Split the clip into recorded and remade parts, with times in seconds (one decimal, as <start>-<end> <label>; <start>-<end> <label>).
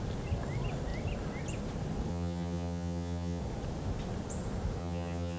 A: 0.0-2.1 recorded; 2.1-3.4 remade; 3.4-4.8 recorded; 4.8-5.4 remade